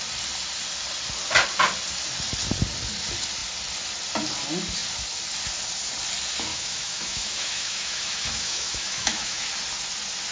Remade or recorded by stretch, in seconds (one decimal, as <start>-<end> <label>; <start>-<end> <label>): 0.0-6.5 recorded; 6.5-9.5 remade; 9.5-10.3 recorded